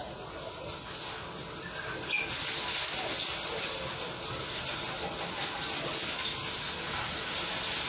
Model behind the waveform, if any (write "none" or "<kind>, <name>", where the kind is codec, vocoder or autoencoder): none